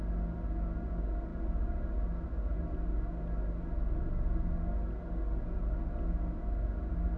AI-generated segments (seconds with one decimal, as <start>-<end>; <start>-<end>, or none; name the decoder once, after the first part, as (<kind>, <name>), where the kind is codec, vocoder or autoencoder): none